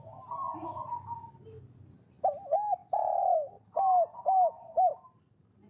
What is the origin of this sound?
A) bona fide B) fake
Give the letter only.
A